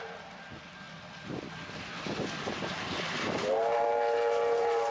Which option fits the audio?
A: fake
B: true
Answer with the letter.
B